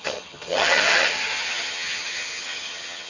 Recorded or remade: remade